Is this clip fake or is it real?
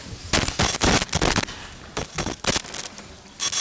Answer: real